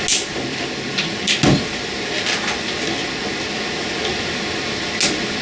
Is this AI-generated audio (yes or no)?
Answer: no